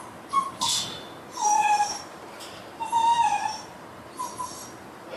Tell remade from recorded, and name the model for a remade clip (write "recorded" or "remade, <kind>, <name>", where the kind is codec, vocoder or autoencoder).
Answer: recorded